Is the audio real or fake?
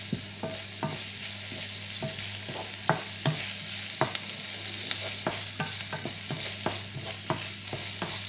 real